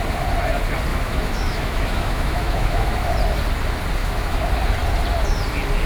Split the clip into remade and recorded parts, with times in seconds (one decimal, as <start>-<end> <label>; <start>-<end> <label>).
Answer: 0.0-0.9 recorded; 0.9-3.1 remade; 3.1-4.0 recorded; 4.0-4.5 remade; 4.5-5.9 recorded